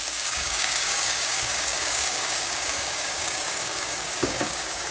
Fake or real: fake